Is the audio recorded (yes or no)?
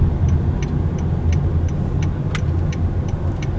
yes